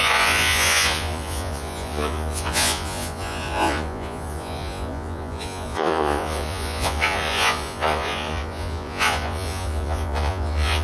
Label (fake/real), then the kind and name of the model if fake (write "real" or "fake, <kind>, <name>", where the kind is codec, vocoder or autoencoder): fake, vocoder, Vocos